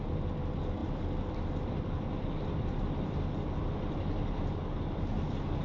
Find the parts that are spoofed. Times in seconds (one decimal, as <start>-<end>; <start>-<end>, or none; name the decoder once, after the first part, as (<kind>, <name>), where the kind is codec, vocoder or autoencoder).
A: none